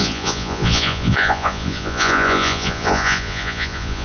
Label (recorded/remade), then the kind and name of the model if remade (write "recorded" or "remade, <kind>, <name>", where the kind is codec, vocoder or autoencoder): remade, vocoder, Vocos